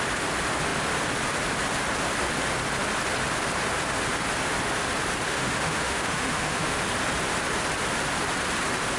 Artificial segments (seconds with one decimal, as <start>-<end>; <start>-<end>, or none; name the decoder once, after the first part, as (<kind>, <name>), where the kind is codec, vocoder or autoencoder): 5.3-6.8 (autoencoder, DAC-VAE)